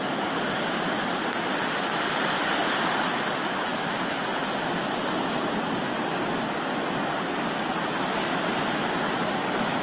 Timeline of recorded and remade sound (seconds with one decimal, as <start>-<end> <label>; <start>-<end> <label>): 0.0-2.6 recorded; 2.6-3.3 remade; 3.3-3.7 recorded; 3.7-4.3 remade; 4.3-9.8 recorded